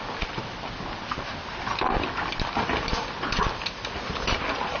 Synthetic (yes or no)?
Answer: no